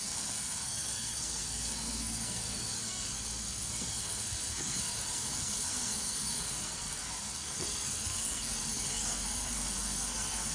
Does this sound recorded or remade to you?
remade